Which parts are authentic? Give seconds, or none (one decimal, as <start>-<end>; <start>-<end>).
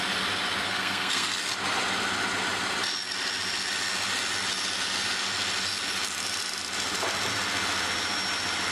0.0-0.6; 1.4-8.7